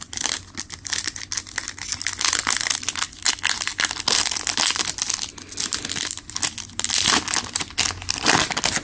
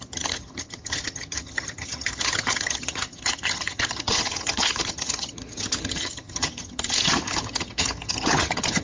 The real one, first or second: first